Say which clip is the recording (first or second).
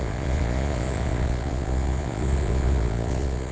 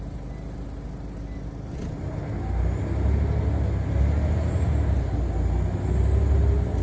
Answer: second